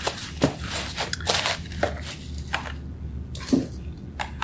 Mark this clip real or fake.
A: real